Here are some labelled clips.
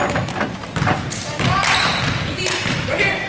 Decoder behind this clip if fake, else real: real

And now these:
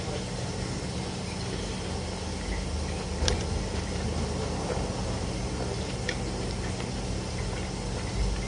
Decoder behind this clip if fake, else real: real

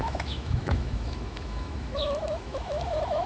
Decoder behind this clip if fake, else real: fake, autoencoder, DAC-VAE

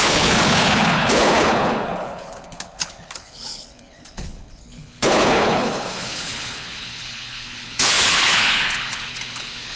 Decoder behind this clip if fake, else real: fake, codec, HILCodec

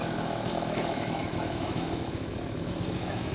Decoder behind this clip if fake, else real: fake, autoencoder, DAC-VAE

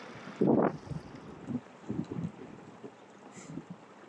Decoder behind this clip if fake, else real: real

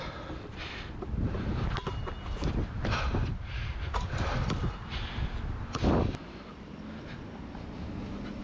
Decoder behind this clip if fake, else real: real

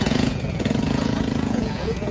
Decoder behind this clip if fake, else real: fake, vocoder, Vocos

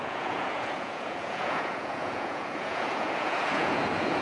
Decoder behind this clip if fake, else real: fake, vocoder, Vocos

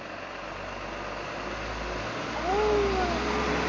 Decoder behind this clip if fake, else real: real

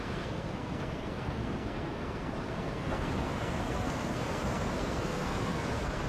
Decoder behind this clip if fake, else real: fake, codec, SNAC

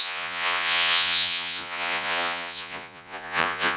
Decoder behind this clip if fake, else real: fake, vocoder, Vocos